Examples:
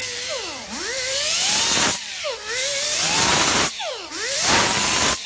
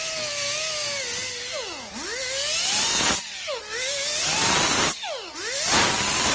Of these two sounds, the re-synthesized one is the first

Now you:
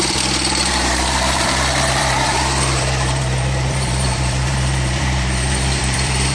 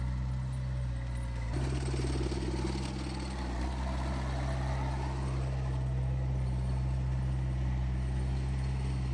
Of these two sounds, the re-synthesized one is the first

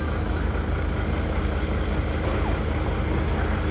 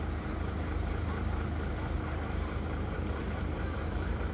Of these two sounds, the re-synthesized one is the second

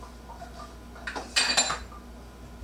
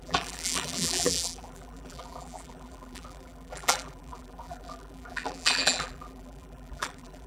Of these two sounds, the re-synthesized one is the second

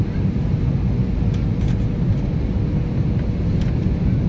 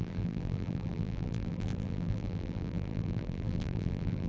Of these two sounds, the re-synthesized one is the second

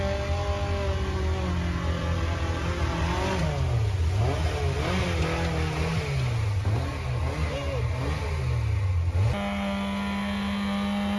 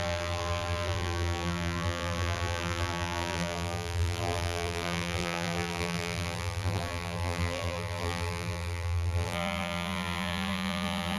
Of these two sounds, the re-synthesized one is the second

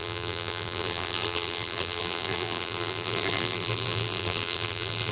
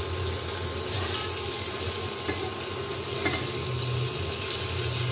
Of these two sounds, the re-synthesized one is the first